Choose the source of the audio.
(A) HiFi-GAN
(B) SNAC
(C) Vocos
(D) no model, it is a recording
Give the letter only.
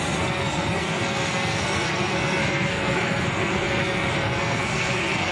B